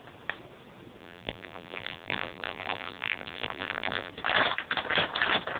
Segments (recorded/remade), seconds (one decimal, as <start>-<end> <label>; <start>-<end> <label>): 0.0-1.0 recorded; 1.0-4.1 remade; 4.1-5.6 recorded